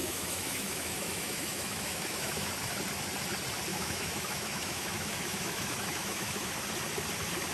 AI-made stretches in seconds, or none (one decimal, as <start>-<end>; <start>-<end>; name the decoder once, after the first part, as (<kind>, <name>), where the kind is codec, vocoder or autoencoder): 0.0-2.5 (autoencoder, DAC-VAE); 3.7-6.5